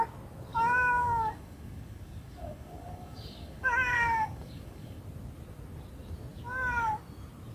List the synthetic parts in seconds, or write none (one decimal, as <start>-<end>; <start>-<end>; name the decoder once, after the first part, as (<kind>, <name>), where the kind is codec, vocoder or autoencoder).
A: 0.5-5.0 (codec, DAC)